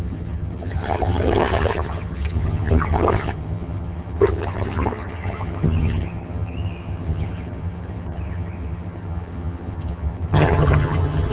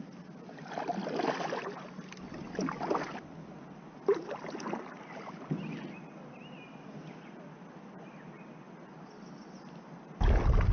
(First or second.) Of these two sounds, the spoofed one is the first